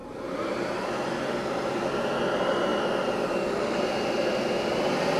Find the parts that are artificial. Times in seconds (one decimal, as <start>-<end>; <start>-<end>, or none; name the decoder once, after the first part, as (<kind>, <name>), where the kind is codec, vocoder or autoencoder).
0.0-1.8 (vocoder, BigVGAN v2)